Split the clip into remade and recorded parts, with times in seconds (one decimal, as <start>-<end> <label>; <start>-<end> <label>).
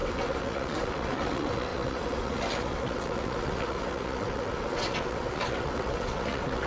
0.0-6.7 remade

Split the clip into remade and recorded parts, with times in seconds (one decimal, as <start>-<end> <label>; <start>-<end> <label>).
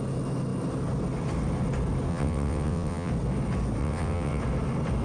0.0-2.1 recorded; 2.1-3.1 remade; 3.1-3.8 recorded; 3.8-4.4 remade; 4.4-5.0 recorded